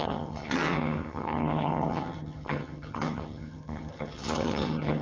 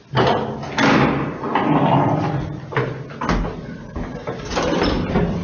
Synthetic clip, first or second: first